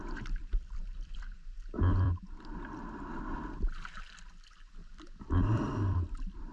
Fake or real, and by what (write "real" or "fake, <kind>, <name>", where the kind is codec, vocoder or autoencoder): fake, vocoder, BigVGAN v2